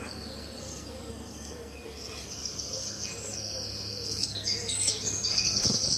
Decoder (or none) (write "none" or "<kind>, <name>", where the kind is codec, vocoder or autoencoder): codec, SNAC